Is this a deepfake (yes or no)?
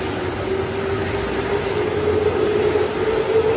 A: no